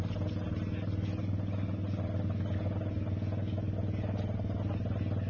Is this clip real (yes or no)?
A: yes